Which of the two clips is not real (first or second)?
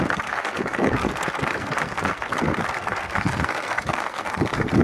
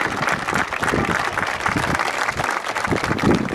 first